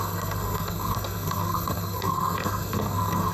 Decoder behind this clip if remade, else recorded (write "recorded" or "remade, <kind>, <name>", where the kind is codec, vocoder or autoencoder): remade, codec, SNAC